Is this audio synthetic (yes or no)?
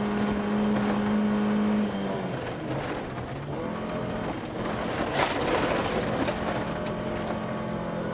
no